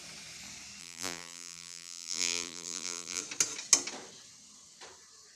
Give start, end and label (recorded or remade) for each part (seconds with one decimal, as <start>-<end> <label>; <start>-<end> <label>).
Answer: 0.0-0.8 recorded; 0.8-3.2 remade; 3.2-5.4 recorded